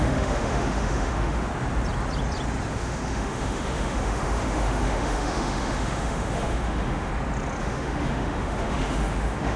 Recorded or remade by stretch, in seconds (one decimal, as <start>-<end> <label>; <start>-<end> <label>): 0.0-1.5 remade; 1.5-2.7 recorded; 2.7-7.1 remade; 7.1-7.6 recorded; 7.6-9.6 remade

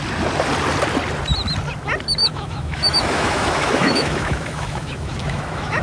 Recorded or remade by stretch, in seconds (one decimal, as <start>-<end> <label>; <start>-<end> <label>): 0.0-2.2 recorded; 2.2-5.8 remade

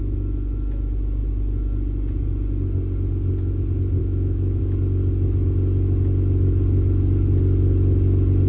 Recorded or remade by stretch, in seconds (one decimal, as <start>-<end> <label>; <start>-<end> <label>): 0.0-4.0 recorded; 4.0-4.6 remade; 4.6-8.5 recorded

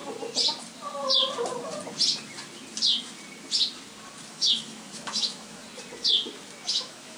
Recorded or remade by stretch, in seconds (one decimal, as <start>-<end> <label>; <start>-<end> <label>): 0.0-4.3 recorded; 4.3-5.6 remade; 5.6-6.7 recorded; 6.7-7.2 remade

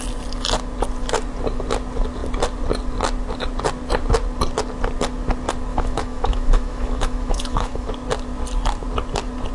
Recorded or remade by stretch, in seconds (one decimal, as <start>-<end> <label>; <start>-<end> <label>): 0.0-5.7 recorded; 5.7-7.9 remade; 7.9-9.5 recorded

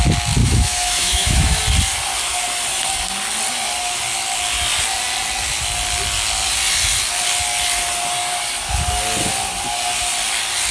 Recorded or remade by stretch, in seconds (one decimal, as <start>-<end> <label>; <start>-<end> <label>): 0.0-0.4 recorded; 0.4-1.6 remade; 1.6-10.7 recorded

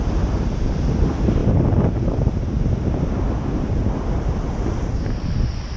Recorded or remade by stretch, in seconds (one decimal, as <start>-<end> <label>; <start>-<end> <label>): 0.0-5.8 recorded

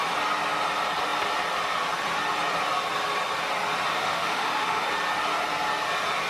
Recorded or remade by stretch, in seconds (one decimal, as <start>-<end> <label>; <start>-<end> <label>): 0.0-3.9 recorded; 3.9-4.9 remade; 4.9-6.3 recorded